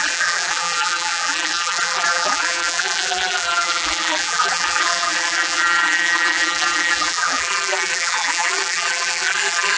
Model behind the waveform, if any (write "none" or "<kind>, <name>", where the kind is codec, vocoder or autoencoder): vocoder, BigVGAN v2